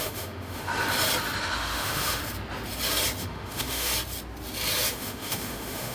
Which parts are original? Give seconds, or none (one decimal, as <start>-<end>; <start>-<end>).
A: 0.7-1.4; 2.2-3.2; 3.9-4.9